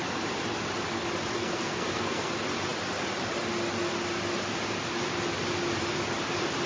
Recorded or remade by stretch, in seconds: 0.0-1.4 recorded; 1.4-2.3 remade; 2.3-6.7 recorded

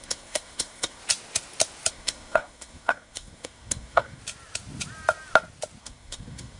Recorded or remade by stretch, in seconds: 0.0-1.0 remade; 1.0-1.9 recorded; 1.9-4.2 remade; 4.2-5.8 recorded; 5.8-6.6 remade

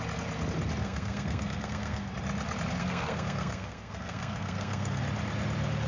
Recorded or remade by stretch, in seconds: 0.0-0.8 recorded; 0.8-2.1 remade; 2.1-2.8 recorded; 2.8-5.0 remade; 5.0-5.9 recorded

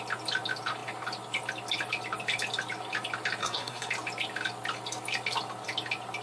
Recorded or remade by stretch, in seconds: 0.0-3.4 recorded; 3.4-3.9 remade; 3.9-6.2 recorded

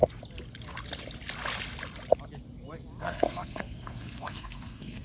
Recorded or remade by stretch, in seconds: 0.0-3.0 recorded; 3.0-5.0 remade